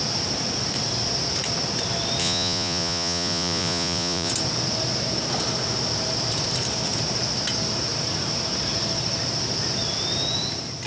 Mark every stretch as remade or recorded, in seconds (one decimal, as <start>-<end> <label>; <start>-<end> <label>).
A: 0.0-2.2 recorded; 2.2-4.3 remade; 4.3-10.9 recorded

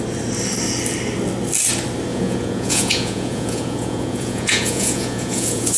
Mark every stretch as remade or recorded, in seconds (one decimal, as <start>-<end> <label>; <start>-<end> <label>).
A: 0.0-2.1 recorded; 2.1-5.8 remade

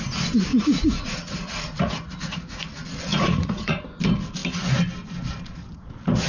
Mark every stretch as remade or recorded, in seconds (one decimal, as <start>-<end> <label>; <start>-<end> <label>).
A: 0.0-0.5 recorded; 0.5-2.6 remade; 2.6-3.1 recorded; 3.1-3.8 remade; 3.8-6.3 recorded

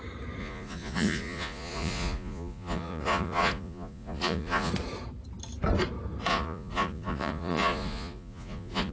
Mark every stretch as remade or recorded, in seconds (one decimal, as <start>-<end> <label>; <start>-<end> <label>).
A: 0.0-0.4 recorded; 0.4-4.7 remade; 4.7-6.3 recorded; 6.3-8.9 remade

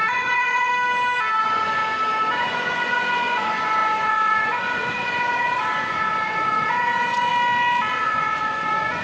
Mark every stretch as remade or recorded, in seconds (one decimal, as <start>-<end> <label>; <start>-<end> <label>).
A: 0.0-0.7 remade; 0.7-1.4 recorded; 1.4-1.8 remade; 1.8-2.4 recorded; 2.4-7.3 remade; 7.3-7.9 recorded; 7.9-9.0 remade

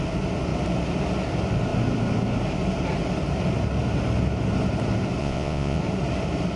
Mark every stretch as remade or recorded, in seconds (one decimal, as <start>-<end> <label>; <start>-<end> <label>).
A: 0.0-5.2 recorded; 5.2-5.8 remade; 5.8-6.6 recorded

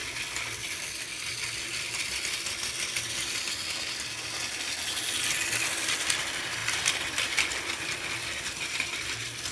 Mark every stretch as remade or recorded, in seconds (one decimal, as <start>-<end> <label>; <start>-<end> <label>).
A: 0.0-9.5 recorded